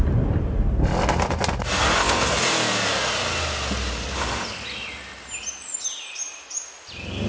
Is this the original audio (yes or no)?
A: yes